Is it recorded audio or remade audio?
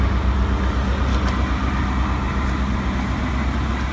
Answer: recorded